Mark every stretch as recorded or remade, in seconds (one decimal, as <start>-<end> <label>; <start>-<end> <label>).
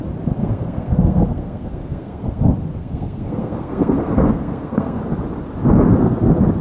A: 0.0-0.4 recorded; 0.4-2.4 remade; 2.4-2.8 recorded; 2.8-5.0 remade; 5.0-6.6 recorded